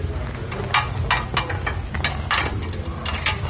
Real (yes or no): yes